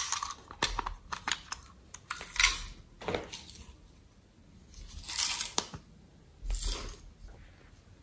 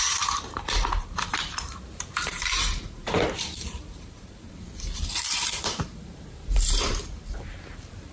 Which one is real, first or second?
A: first